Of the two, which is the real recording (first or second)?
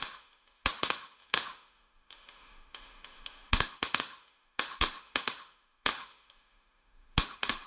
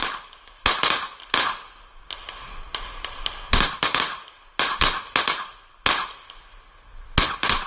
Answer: second